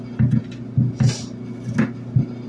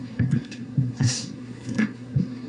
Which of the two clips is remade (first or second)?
second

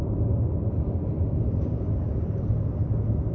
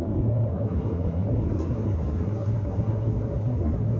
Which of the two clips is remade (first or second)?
second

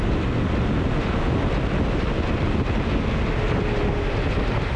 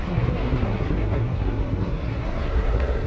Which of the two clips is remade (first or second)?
second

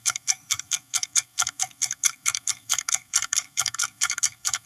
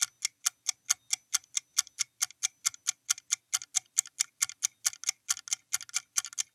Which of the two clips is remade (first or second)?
first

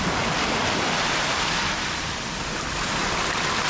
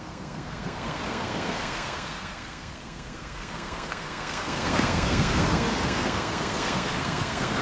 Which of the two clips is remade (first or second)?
second